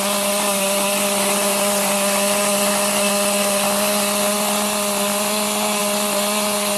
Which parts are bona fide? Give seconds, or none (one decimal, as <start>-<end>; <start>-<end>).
0.0-6.8